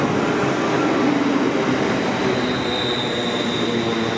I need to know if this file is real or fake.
real